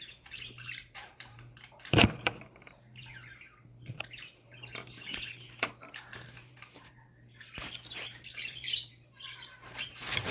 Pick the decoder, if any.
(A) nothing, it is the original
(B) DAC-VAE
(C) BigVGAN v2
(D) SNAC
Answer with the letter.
C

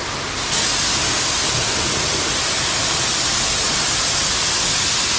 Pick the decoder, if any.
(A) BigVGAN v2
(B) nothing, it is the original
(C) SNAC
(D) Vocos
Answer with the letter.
B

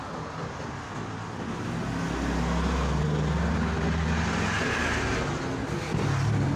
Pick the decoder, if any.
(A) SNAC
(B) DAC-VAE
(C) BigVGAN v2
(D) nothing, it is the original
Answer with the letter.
D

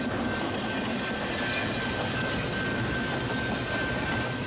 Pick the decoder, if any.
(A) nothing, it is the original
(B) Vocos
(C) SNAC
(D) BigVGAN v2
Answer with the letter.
A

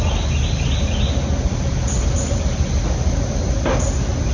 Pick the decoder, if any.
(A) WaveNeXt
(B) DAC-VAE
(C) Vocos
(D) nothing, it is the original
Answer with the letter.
D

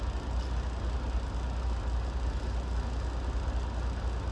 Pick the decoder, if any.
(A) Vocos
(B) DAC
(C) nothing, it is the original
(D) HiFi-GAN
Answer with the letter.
C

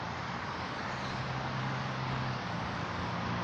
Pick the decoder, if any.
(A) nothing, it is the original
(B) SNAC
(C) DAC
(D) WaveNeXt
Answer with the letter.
C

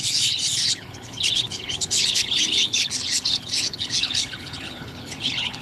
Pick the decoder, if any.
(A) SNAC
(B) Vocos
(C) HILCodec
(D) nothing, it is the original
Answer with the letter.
C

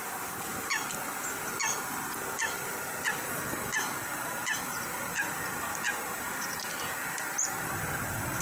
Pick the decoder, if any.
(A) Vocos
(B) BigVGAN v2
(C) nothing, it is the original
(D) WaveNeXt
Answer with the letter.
C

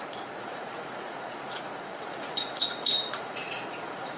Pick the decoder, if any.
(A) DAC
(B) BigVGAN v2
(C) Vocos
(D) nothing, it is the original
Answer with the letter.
C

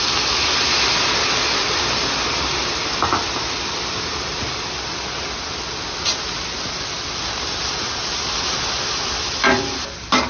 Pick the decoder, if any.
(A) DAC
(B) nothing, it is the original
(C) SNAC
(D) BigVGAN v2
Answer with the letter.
B